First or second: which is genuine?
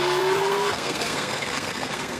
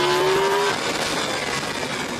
second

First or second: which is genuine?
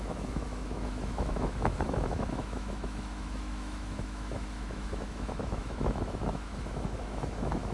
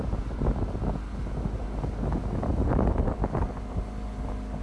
second